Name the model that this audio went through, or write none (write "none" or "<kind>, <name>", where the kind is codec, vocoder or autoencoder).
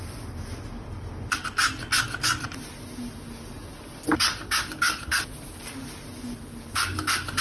none